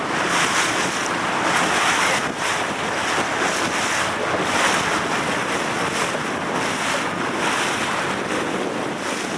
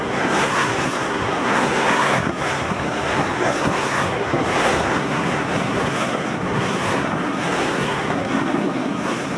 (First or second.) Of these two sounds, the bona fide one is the first